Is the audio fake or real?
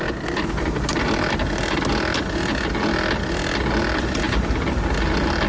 real